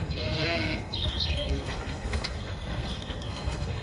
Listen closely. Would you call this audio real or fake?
fake